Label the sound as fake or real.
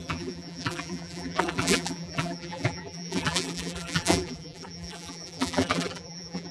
fake